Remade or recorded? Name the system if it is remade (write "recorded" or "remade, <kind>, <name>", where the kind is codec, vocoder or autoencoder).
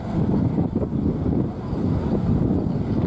recorded